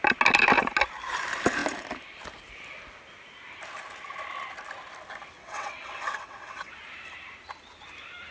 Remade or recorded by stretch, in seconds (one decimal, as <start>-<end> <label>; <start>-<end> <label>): 0.0-5.4 recorded; 5.4-6.7 remade; 6.7-8.3 recorded